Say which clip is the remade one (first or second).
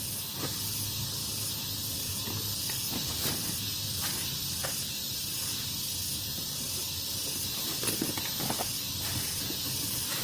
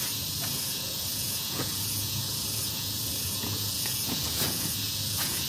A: second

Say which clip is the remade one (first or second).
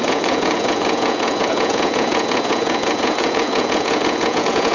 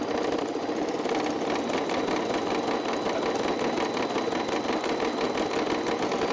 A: first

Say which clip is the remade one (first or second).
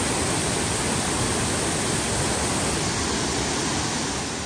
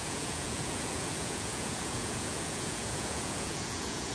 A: second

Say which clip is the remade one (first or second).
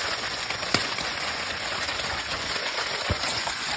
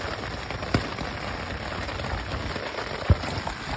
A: first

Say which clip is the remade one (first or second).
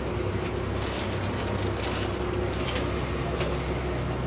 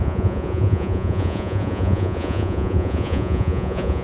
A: second